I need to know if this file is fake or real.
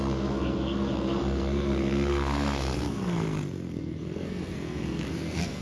fake